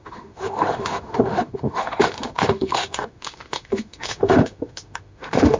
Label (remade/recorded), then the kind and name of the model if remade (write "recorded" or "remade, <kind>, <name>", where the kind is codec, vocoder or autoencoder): remade, autoencoder, DAC-VAE